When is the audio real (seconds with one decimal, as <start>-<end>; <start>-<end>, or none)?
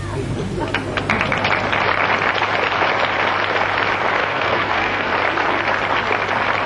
0.0-4.2; 5.1-6.7